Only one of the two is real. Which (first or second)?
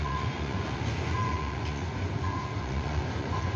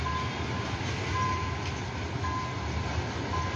second